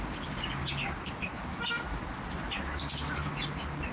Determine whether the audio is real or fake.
real